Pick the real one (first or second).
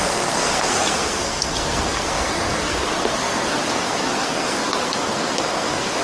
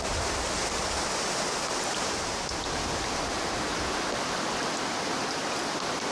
second